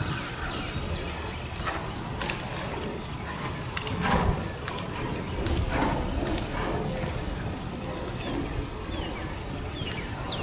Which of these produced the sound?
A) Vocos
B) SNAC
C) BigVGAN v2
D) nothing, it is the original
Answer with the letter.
D